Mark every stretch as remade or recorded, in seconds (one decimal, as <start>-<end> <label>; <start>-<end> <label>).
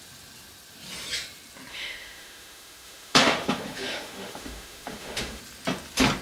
0.0-1.7 recorded; 1.7-5.4 remade; 5.4-6.2 recorded